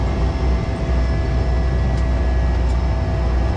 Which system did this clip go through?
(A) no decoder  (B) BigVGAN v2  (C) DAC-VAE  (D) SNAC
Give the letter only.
A